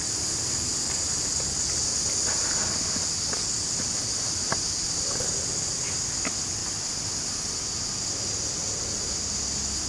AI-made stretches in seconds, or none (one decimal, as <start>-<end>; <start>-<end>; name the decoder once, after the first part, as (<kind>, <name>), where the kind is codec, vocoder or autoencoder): none